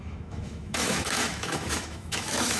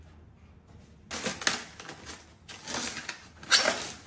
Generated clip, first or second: first